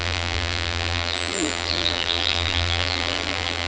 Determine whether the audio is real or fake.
fake